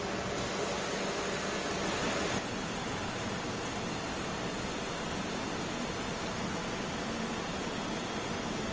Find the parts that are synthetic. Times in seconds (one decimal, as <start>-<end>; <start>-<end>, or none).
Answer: none